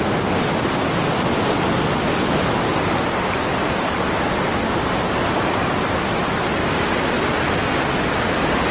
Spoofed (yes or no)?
no